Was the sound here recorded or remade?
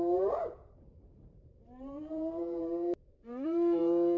remade